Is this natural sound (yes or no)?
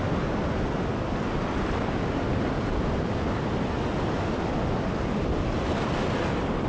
yes